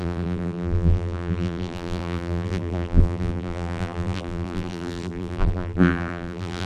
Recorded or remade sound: remade